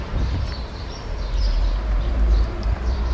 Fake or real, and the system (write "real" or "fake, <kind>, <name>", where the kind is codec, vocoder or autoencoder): fake, vocoder, BigVGAN v2